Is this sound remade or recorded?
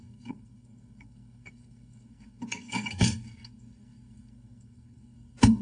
remade